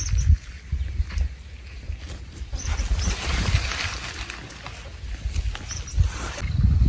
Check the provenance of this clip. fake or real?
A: real